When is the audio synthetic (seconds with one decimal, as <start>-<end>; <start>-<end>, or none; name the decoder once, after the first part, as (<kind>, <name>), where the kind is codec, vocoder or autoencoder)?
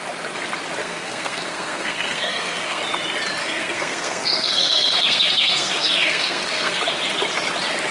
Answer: 0.8-2.8 (codec, SNAC); 3.4-6.8